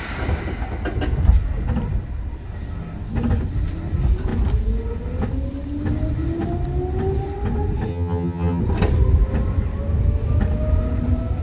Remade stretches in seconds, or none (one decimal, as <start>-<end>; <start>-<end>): 7.9-8.6